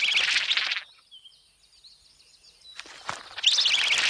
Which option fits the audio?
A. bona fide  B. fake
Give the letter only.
A